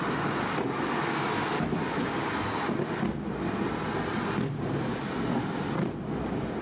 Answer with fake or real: real